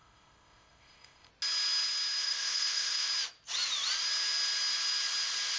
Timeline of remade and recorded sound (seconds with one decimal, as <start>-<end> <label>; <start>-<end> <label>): 0.0-1.3 remade; 1.3-2.2 recorded; 2.2-3.1 remade; 3.1-5.6 recorded